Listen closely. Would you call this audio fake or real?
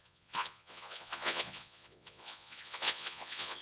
fake